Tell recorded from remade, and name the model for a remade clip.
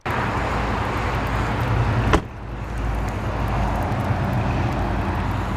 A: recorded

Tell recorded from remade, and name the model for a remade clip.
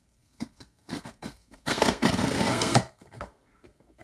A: remade, codec, SNAC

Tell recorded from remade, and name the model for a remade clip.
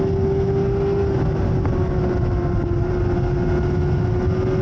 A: recorded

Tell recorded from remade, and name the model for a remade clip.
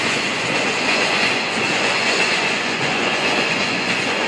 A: remade, vocoder, Vocos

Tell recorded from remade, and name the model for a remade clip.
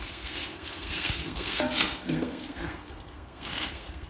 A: remade, codec, SNAC